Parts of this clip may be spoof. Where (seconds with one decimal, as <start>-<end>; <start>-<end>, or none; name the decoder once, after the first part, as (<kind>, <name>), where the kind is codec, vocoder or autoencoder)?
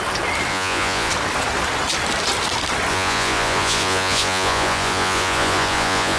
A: 0.5-1.1 (vocoder, Vocos); 2.9-6.2